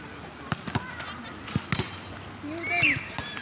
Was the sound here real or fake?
real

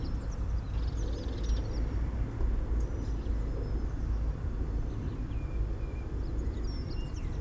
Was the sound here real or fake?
real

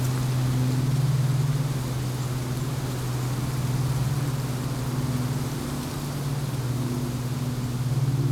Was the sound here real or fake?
real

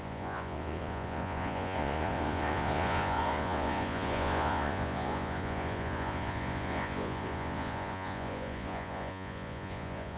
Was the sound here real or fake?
fake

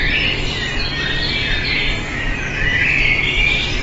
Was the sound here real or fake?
real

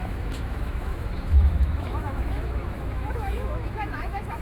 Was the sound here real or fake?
fake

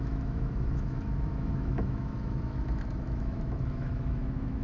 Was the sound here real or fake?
fake